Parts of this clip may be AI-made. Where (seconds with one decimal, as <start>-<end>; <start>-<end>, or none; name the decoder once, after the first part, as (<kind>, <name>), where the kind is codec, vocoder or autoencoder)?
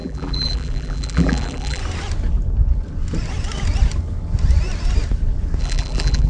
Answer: 0.0-1.8 (vocoder, BigVGAN v2); 5.6-6.3